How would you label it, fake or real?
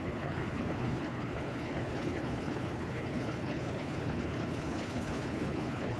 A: fake